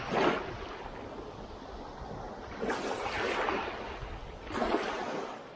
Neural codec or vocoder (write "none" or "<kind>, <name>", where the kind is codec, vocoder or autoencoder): none